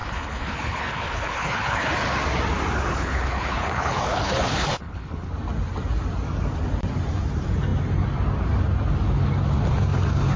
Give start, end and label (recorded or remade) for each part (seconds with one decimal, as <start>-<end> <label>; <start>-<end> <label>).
0.0-1.9 remade; 1.9-2.9 recorded; 2.9-5.3 remade; 5.3-10.4 recorded